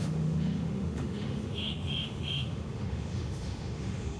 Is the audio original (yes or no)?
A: no